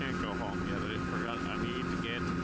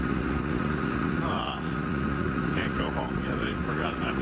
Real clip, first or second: first